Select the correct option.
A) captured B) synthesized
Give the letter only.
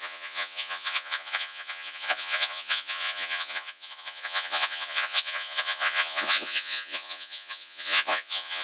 B